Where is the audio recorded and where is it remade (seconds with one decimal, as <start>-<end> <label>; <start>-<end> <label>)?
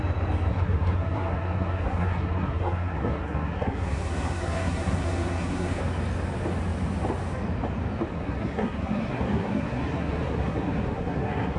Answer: 0.0-0.5 recorded; 0.5-5.8 remade; 5.8-8.1 recorded; 8.1-11.6 remade